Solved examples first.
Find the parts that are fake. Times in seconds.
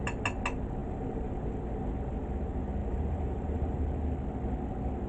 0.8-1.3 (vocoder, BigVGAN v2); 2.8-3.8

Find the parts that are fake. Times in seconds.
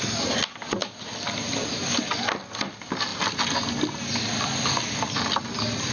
none